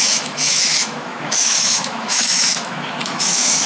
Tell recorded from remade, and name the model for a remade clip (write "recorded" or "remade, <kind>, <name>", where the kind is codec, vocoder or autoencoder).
remade, autoencoder, DAC-VAE